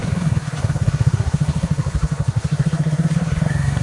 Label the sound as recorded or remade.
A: remade